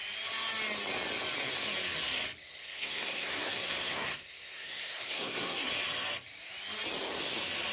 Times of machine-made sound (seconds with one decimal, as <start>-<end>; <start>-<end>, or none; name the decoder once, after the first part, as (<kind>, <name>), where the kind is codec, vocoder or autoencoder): 2.4-5.7 (codec, SNAC)